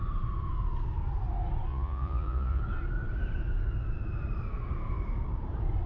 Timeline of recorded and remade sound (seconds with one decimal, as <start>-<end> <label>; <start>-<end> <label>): 0.0-1.7 recorded; 1.7-2.6 remade; 2.6-5.9 recorded